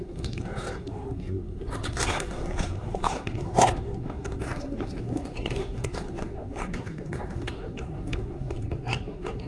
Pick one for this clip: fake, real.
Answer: fake